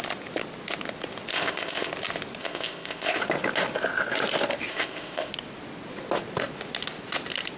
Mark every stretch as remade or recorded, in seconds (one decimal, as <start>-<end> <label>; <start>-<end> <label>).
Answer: 0.0-1.3 recorded; 1.3-1.9 remade; 1.9-2.4 recorded; 2.4-3.2 remade; 3.2-4.7 recorded; 4.7-5.3 remade; 5.3-7.6 recorded